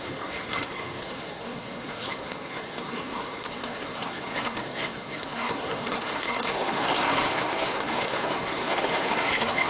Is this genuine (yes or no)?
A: no